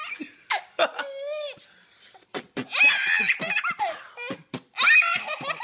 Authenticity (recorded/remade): recorded